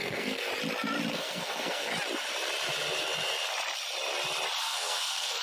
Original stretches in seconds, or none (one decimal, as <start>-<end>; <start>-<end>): 0.5-1.1; 1.9-4.6

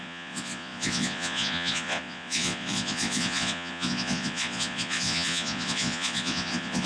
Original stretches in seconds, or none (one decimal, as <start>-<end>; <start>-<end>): none

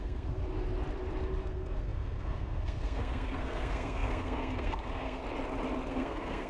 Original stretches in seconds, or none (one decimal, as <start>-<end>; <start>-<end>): 0.4-1.4; 5.2-5.9

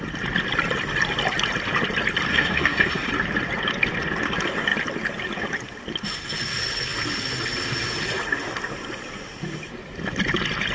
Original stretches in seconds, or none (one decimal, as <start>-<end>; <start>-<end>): 0.0-2.3; 3.1-10.7

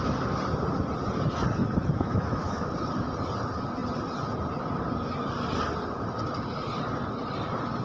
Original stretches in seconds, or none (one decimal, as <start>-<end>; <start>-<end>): 0.0-1.6; 2.7-7.8

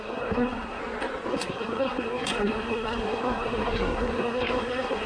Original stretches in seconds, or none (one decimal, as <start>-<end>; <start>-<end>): 0.8-1.3